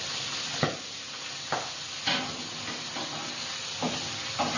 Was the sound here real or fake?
real